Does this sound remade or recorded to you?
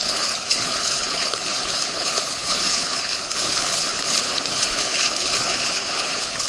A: remade